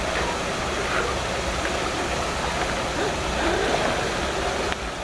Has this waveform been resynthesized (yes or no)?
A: no